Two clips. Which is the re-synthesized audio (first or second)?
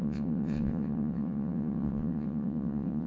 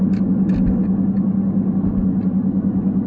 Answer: first